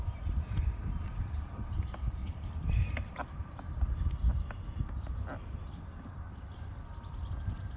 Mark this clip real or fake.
fake